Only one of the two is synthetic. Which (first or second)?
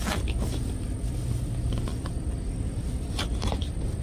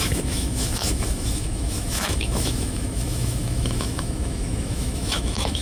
second